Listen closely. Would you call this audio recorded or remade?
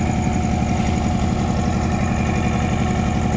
recorded